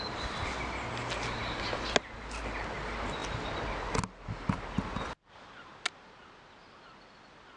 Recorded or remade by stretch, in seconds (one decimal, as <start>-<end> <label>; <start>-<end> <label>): 0.0-7.6 recorded